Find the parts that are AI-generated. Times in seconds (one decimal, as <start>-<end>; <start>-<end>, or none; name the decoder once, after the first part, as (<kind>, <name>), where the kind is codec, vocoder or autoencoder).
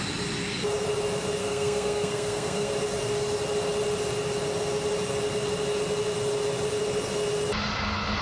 1.4-2.7 (codec, SNAC)